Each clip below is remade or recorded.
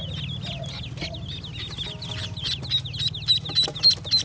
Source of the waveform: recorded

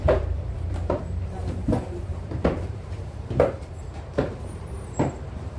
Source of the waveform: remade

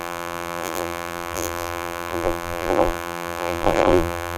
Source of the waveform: remade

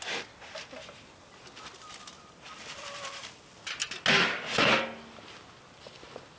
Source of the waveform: recorded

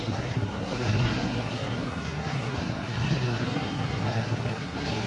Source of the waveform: remade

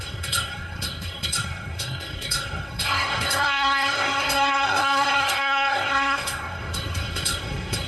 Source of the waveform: remade